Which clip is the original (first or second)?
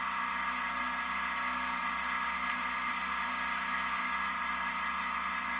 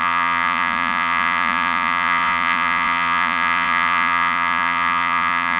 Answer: first